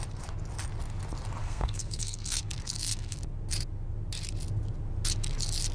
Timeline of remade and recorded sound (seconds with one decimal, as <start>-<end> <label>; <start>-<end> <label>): 0.0-1.4 recorded; 1.4-3.2 remade; 3.2-5.7 recorded